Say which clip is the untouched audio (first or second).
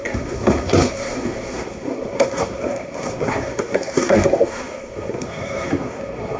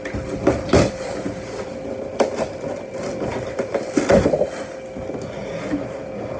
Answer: second